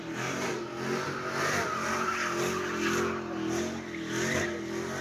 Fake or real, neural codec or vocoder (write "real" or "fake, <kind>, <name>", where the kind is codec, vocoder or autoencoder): real